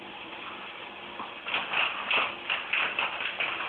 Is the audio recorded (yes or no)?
yes